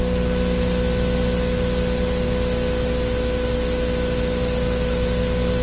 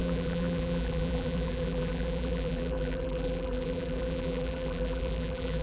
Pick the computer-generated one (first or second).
second